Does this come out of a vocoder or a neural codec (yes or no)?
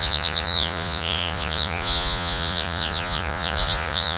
yes